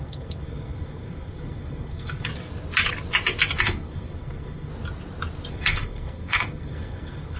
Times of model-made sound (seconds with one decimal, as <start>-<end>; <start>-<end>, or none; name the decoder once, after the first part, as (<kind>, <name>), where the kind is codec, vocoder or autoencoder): 0.0-2.3 (codec, SNAC); 3.6-4.7; 5.5-7.4